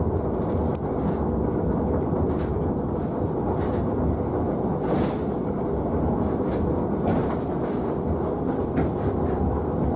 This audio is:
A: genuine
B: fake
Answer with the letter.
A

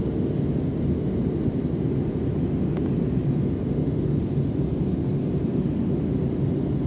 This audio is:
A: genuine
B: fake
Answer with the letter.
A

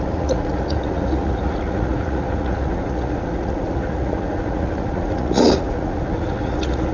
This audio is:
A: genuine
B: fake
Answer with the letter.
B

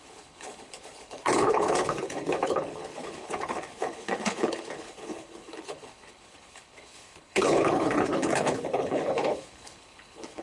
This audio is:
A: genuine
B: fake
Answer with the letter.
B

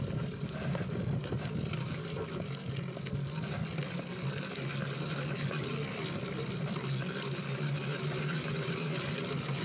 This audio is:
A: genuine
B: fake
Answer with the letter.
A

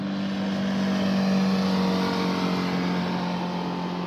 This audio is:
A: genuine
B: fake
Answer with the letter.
A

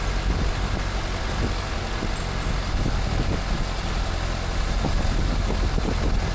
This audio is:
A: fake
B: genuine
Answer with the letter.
B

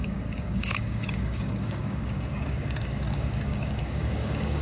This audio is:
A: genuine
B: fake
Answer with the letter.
B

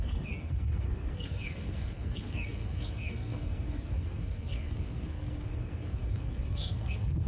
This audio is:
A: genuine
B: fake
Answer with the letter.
B